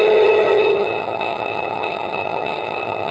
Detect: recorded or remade remade